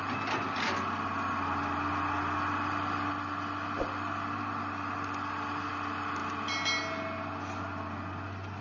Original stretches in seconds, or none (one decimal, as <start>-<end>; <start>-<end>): 0.0-8.6